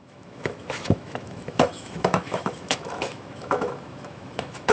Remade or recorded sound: remade